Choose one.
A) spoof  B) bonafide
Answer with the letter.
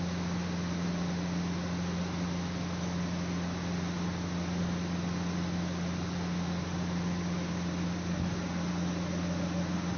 B